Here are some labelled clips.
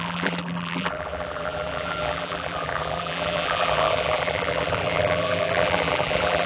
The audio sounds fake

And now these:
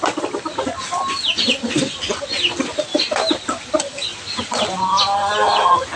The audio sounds real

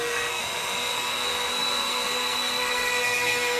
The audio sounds fake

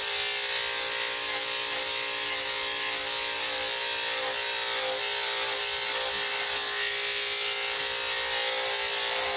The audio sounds real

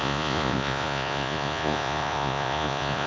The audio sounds fake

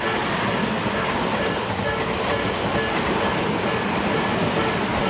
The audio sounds real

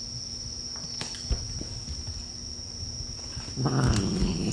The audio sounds real